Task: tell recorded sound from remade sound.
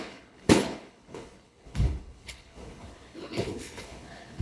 remade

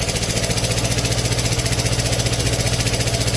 recorded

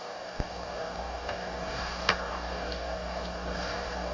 remade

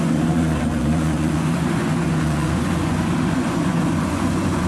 remade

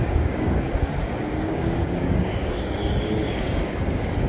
remade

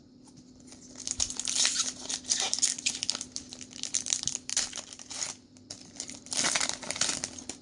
remade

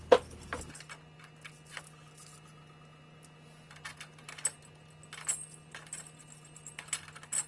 recorded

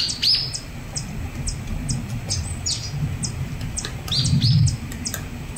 recorded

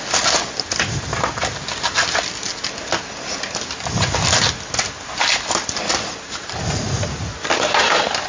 recorded